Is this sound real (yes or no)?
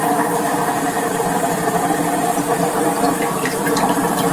no